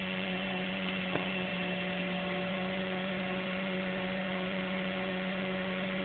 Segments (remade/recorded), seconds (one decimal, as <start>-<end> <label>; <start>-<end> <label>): 0.0-1.5 remade; 1.5-2.5 recorded; 2.5-6.0 remade